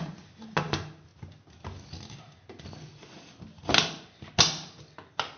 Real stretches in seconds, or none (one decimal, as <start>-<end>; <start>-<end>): 0.0-5.4